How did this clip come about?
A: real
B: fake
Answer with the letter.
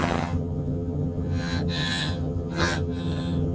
B